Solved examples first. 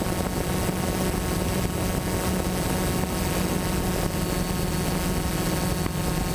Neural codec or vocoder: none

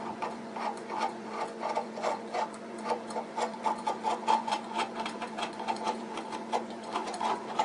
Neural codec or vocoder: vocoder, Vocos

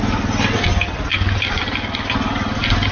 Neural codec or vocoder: none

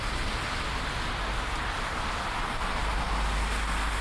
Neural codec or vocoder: none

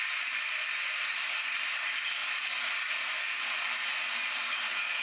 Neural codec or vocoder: none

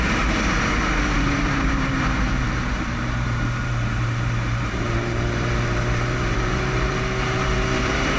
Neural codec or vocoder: vocoder, BigVGAN v2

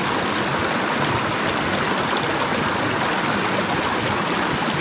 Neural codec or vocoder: none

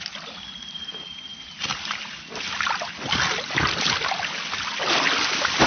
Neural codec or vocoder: none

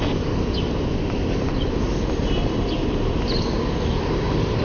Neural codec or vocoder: none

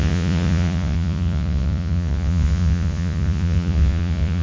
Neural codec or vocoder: vocoder, Vocos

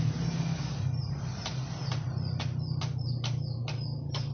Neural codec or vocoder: none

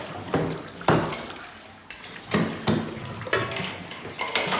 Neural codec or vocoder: none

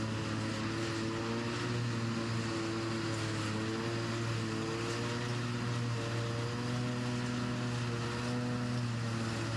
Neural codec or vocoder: none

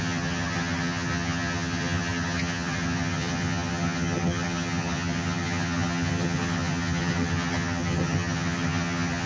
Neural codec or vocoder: vocoder, HiFi-GAN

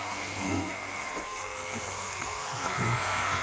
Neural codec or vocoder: codec, SNAC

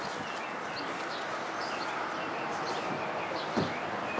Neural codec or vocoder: none